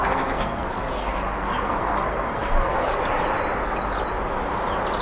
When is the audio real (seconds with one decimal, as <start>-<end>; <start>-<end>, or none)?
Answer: 3.0-5.0